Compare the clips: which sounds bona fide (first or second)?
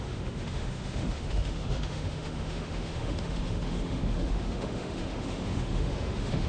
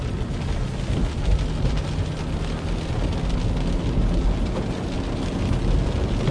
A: second